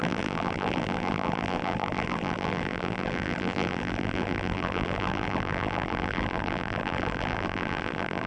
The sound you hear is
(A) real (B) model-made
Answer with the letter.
B